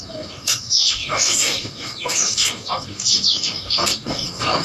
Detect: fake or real fake